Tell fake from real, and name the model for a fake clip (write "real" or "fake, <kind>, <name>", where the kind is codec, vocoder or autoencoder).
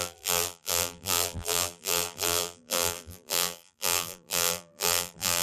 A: fake, vocoder, BigVGAN v2